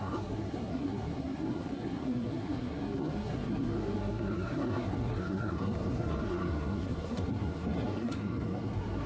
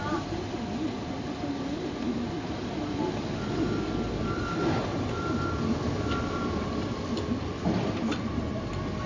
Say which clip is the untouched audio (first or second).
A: second